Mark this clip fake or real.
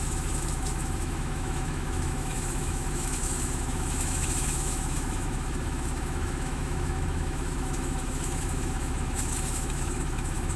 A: fake